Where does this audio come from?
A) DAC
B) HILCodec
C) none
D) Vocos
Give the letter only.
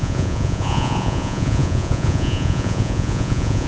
D